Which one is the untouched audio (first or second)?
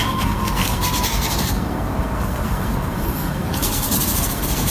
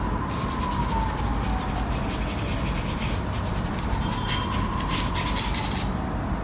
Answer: second